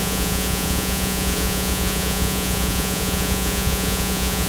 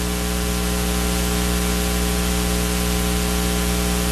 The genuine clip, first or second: second